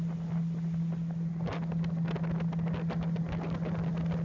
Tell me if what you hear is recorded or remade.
recorded